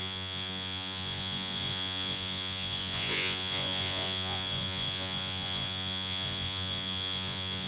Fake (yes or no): yes